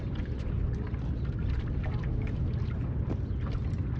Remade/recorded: recorded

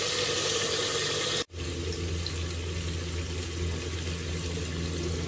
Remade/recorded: recorded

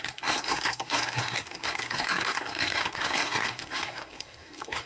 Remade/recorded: remade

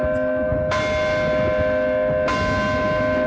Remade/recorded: recorded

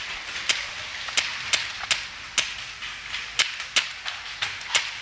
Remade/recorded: recorded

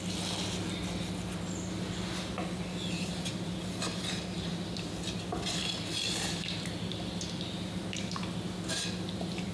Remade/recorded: recorded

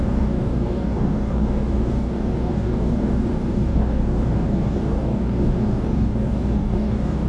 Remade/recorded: remade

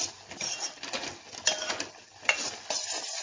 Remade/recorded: recorded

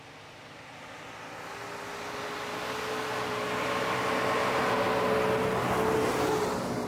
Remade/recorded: recorded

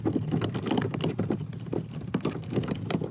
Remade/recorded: recorded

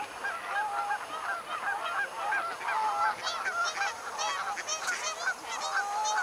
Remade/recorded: recorded